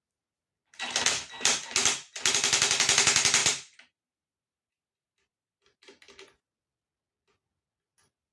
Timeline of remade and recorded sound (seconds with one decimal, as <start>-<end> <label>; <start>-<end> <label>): 0.0-3.4 recorded; 3.4-6.2 remade; 6.2-8.3 recorded